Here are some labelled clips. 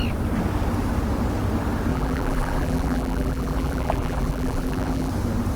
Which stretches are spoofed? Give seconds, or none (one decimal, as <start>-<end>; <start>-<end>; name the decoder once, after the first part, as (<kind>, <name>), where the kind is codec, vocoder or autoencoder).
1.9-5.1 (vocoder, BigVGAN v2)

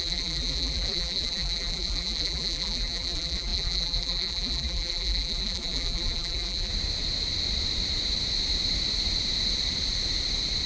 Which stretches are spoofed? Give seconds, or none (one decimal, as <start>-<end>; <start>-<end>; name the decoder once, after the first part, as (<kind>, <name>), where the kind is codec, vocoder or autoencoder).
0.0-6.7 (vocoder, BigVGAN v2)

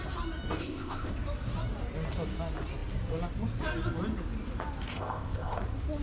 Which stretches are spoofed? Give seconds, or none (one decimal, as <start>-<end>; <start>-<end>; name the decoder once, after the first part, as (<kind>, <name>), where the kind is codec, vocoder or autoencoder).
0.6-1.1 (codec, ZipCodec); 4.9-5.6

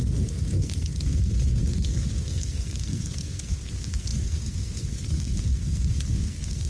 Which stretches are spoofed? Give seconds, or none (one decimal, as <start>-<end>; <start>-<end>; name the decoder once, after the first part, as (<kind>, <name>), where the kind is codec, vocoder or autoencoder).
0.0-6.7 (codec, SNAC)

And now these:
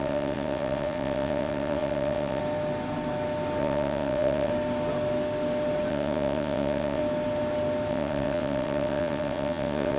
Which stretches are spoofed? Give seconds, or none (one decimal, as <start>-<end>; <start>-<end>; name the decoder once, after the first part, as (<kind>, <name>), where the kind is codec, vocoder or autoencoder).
0.0-2.4 (vocoder, WaveNeXt); 3.6-4.5; 5.9-7.0; 7.9-10.0

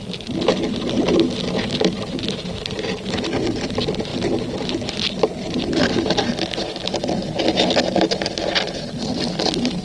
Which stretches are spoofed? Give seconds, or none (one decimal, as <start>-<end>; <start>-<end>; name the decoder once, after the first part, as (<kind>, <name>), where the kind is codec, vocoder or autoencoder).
none

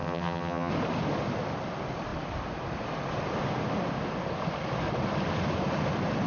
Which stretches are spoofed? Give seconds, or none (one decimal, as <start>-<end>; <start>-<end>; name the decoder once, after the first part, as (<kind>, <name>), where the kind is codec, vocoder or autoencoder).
0.0-0.7 (vocoder, HiFi-GAN)

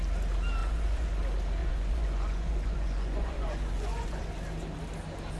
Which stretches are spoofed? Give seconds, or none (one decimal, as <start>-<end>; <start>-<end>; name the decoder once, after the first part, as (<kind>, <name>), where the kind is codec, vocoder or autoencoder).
0.6-1.2 (vocoder, Vocos); 1.6-4.2